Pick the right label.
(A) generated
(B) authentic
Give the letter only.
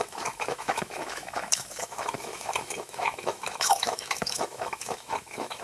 A